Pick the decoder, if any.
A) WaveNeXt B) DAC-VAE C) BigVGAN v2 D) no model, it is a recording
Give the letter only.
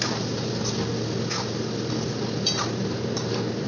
D